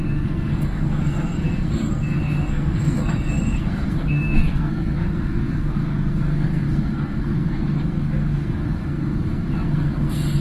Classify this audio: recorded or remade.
remade